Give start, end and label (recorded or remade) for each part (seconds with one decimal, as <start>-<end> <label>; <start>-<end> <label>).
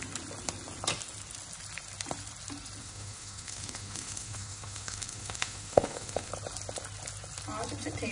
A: 0.0-2.8 recorded; 2.8-6.3 remade; 6.3-8.1 recorded